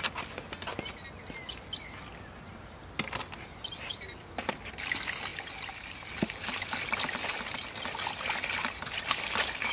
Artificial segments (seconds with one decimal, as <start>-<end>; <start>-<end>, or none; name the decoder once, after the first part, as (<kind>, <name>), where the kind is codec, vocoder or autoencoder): none